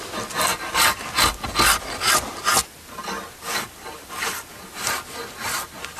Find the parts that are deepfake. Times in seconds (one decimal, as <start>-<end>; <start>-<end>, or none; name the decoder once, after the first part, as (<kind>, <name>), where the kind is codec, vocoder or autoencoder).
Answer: none